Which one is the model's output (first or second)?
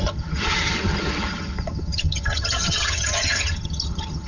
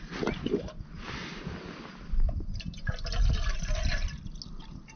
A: first